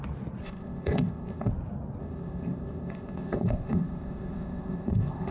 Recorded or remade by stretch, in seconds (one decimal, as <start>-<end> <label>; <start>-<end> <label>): 0.0-0.4 recorded; 0.4-1.5 remade; 1.5-2.0 recorded; 2.0-5.3 remade